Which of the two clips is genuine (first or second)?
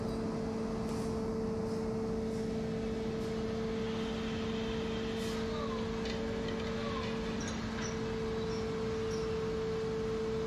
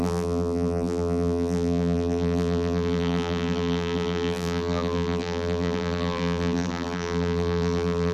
first